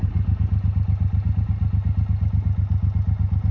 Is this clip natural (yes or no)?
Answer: yes